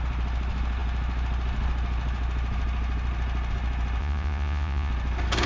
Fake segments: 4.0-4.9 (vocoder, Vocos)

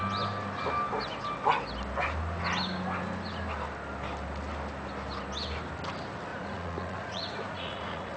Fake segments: 6.3-8.2 (vocoder, Vocos)

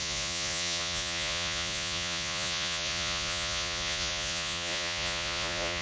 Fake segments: 0.0-5.8 (vocoder, Vocos)

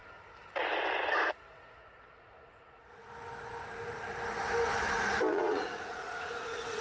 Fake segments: 1.3-3.0 (vocoder, Vocos); 5.3-6.8

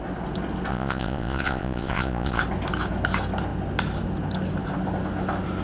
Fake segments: 0.7-2.4 (vocoder, Vocos)